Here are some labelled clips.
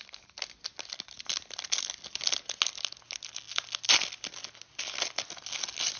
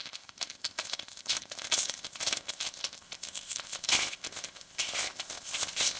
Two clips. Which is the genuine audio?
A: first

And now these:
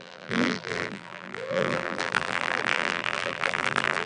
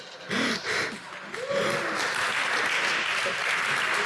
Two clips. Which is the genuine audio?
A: second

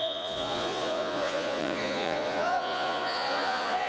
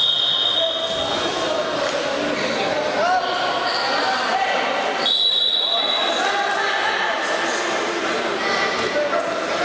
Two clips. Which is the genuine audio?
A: second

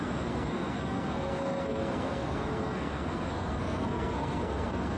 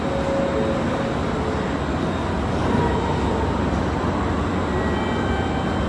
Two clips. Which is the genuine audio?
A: second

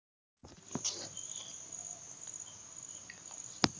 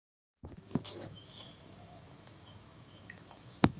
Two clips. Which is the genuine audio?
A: first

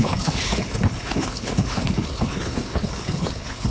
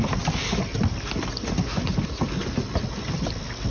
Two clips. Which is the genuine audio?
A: second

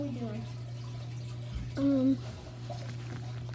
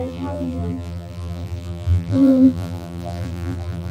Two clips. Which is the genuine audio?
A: first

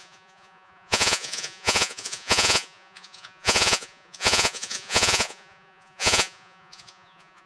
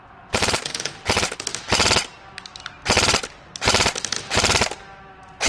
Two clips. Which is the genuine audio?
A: second